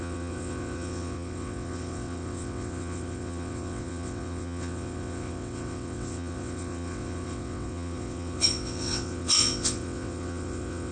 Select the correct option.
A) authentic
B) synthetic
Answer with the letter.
B